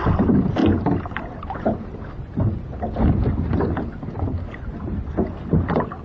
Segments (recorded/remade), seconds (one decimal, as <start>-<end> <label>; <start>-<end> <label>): 0.0-6.0 recorded